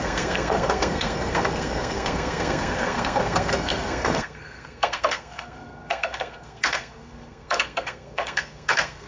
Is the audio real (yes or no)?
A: no